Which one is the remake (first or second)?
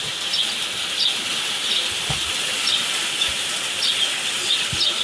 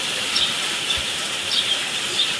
second